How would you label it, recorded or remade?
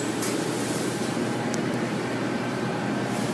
remade